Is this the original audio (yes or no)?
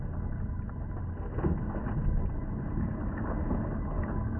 yes